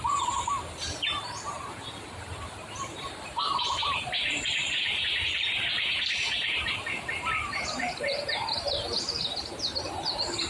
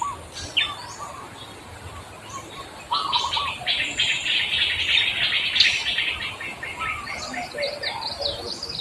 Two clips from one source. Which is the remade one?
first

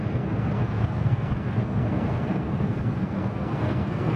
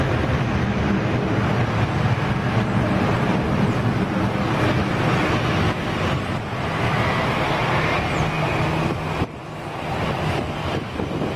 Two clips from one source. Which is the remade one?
first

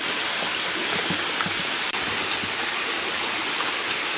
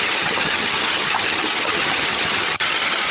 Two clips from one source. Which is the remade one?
second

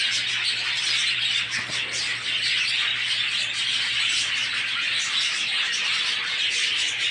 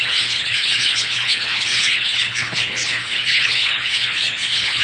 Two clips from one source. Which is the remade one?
second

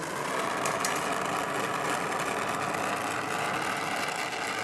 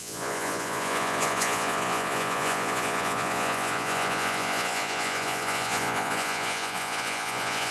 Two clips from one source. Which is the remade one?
second